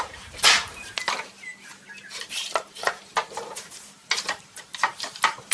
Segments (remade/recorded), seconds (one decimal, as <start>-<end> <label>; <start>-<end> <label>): 0.0-5.5 remade